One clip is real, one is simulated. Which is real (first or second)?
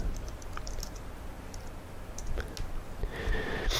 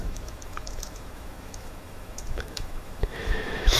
first